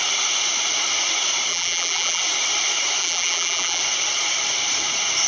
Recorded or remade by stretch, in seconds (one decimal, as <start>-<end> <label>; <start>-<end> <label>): 0.0-1.5 recorded; 1.5-2.2 remade; 2.2-3.0 recorded; 3.0-3.8 remade; 3.8-5.3 recorded